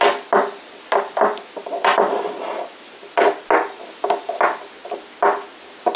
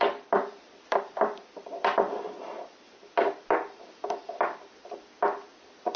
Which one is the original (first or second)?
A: first